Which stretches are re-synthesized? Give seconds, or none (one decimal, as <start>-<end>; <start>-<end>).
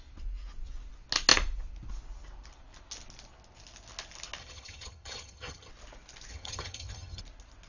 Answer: 4.4-5.7; 6.3-7.2